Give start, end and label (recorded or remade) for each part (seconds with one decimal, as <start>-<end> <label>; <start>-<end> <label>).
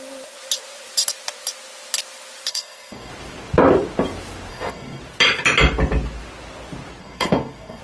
0.0-2.5 recorded; 2.5-3.1 remade; 3.1-4.5 recorded; 4.5-5.0 remade; 5.0-7.0 recorded; 7.0-7.8 remade